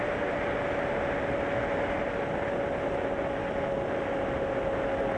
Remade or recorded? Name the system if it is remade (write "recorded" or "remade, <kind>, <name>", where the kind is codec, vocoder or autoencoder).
recorded